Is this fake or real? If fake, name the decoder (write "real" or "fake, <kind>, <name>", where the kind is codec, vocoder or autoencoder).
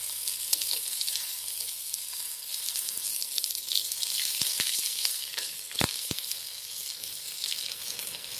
fake, codec, SNAC